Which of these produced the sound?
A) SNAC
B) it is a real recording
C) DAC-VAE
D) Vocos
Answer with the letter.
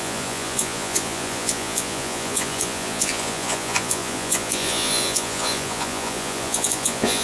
D